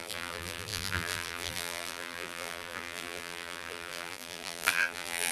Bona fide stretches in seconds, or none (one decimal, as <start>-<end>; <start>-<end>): none